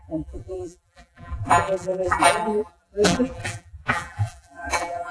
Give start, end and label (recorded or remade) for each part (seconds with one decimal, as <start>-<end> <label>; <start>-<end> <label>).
0.0-5.1 remade

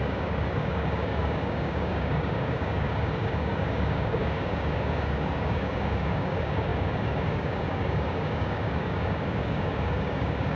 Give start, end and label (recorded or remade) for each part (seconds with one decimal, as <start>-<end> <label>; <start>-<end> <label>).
0.0-10.6 remade

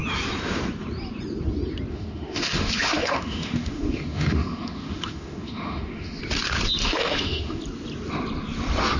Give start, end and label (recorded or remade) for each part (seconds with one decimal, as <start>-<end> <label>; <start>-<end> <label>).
0.0-1.9 recorded; 1.9-6.2 remade; 6.2-6.8 recorded; 6.8-7.6 remade; 7.6-9.0 recorded

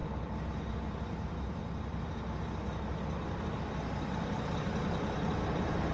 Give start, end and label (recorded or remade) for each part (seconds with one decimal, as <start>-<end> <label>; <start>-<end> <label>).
0.0-5.9 recorded